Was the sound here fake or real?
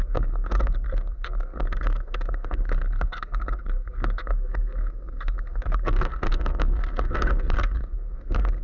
fake